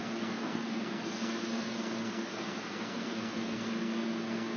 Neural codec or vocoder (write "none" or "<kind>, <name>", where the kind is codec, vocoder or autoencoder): codec, SNAC